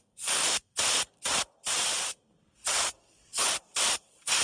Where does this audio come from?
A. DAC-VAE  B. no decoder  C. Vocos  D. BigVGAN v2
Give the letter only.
B